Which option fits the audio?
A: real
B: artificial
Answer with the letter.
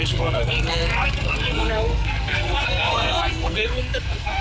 B